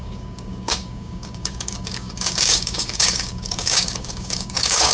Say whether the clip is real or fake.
fake